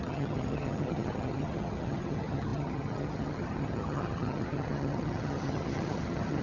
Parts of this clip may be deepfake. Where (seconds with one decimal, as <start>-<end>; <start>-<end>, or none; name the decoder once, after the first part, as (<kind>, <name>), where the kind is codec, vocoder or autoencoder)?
0.0-6.4 (vocoder, HiFi-GAN)